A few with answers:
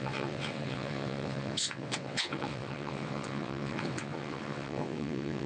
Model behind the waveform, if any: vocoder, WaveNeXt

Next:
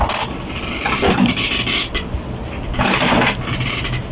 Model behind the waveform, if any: none